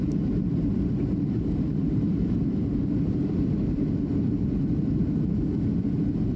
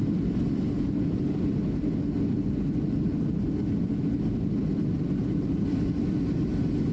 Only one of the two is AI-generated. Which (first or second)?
first